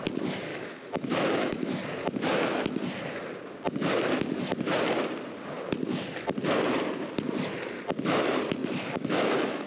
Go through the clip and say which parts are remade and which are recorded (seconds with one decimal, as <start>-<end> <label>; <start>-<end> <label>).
0.0-0.5 recorded; 0.5-1.8 remade; 1.8-8.6 recorded; 8.6-9.7 remade